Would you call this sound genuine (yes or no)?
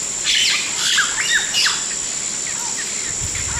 yes